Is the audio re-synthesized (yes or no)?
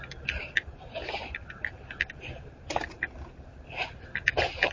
no